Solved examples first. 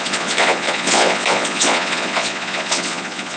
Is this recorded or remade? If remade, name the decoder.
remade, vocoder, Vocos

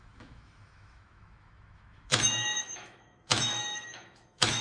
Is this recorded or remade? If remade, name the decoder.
remade, autoencoder, DAC-VAE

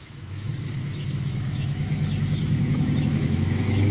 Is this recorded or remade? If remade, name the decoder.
remade, autoencoder, DAC-VAE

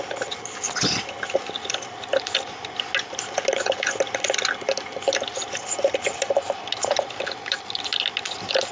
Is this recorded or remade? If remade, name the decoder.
recorded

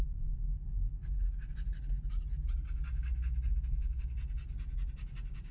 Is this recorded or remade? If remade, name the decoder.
recorded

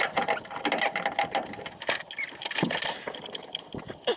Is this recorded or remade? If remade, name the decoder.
recorded